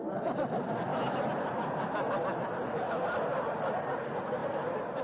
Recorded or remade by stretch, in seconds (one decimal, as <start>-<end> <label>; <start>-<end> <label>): 0.0-5.0 recorded

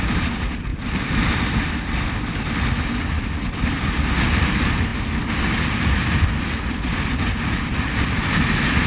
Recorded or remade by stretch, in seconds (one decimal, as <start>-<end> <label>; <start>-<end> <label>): 0.0-0.7 recorded; 0.7-1.4 remade; 1.4-8.9 recorded

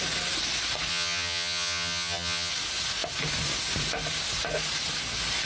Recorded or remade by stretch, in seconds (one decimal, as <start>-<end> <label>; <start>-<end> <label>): 0.0-0.9 recorded; 0.9-2.5 remade; 2.5-5.5 recorded

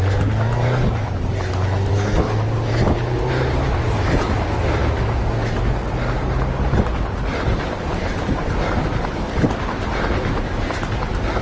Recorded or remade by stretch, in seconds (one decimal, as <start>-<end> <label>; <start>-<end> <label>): 0.0-7.3 recorded; 7.3-8.1 remade; 8.1-11.4 recorded

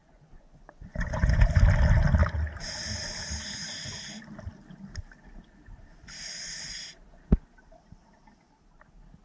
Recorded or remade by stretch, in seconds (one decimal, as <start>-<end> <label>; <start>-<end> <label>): 0.0-1.5 remade; 1.5-9.2 recorded

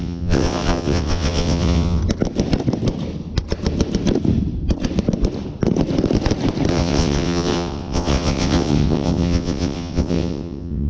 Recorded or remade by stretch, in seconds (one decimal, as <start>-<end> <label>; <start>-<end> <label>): 0.0-2.0 remade; 2.0-6.7 recorded; 6.7-10.9 remade